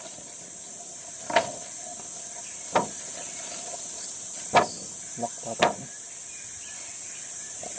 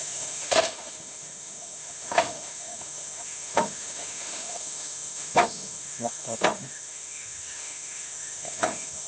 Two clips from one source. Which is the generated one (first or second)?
second